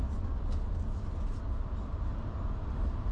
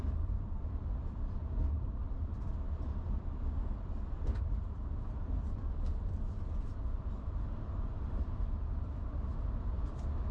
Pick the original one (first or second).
first